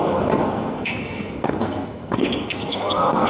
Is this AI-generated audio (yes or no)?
yes